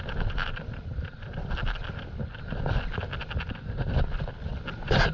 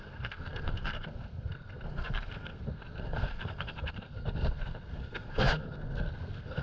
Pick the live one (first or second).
first